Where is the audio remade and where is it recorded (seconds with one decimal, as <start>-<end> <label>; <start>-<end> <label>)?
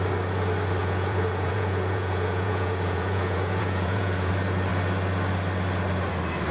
0.0-0.8 recorded; 0.8-4.3 remade; 4.3-6.5 recorded